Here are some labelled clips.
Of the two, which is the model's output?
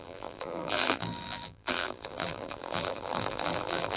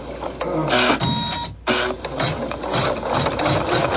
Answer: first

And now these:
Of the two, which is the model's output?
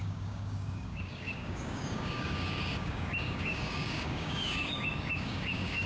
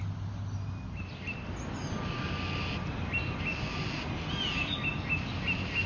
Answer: first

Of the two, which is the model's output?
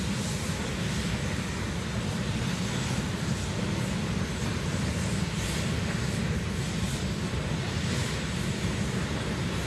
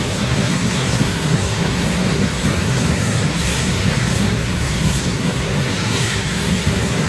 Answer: second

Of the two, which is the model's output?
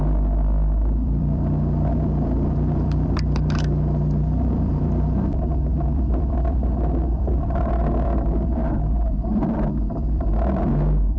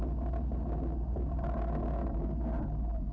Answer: first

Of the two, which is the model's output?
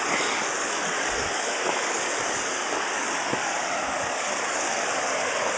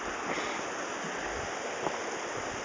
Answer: first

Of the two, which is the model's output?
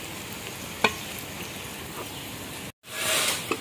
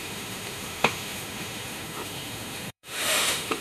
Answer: second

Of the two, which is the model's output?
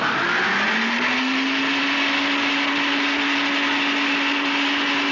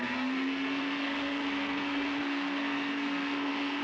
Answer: second